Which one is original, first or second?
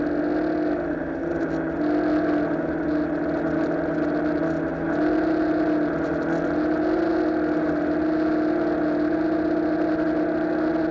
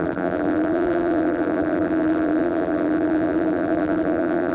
first